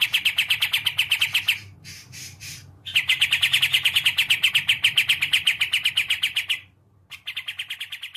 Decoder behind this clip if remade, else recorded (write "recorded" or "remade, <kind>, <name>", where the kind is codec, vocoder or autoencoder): recorded